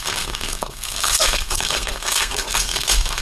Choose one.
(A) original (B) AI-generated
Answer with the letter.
B